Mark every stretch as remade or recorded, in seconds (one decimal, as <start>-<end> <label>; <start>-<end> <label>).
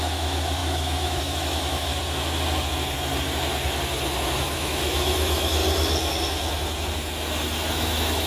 0.0-1.9 remade; 1.9-4.4 recorded; 4.4-5.6 remade; 5.6-7.7 recorded; 7.7-8.3 remade